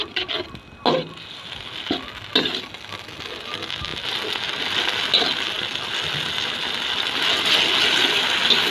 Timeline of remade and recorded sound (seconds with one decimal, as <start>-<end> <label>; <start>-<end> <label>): 0.0-8.7 recorded